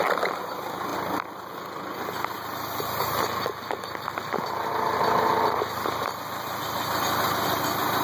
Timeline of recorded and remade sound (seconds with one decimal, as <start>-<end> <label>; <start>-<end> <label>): 0.0-8.0 recorded